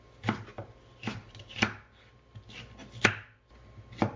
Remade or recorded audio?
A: recorded